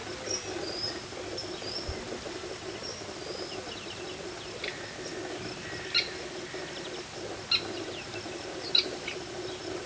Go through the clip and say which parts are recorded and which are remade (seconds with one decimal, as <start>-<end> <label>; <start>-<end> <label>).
0.0-9.9 recorded